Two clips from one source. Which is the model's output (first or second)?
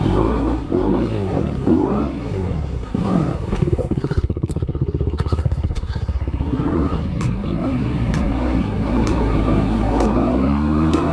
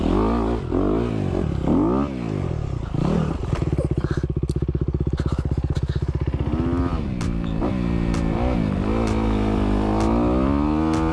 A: first